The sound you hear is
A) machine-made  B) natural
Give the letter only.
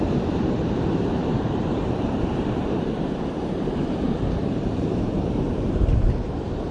A